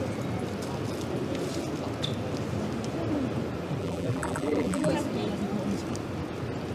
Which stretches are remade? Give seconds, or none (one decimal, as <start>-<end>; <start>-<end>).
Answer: 3.8-4.9